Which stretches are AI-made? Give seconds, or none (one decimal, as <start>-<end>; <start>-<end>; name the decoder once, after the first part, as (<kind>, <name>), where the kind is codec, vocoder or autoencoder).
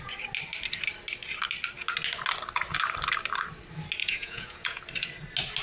4.0-4.8 (vocoder, Vocos)